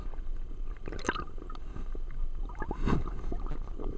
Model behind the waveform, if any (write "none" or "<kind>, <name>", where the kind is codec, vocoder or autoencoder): none